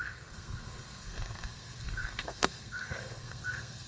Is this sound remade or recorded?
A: remade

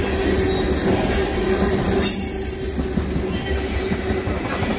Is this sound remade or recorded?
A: recorded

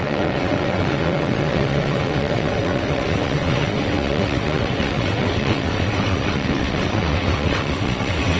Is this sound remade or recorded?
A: remade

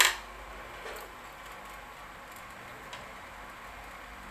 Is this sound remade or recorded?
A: recorded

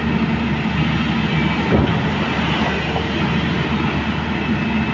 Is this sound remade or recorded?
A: recorded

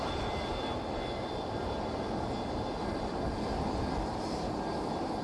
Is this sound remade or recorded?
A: recorded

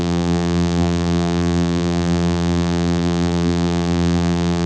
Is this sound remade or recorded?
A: remade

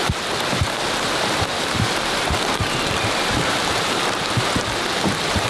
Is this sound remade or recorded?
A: remade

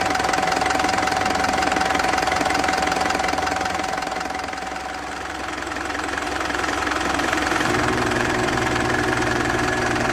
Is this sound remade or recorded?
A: remade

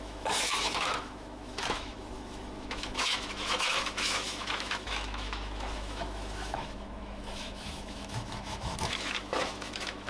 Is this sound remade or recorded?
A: remade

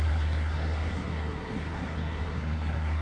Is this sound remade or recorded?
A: remade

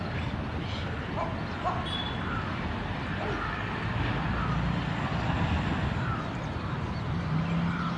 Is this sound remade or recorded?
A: recorded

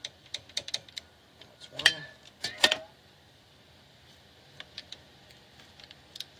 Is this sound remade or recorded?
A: remade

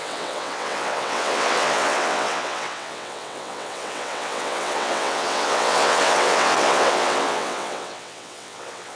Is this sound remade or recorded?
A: remade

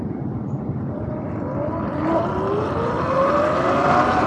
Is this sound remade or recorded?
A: recorded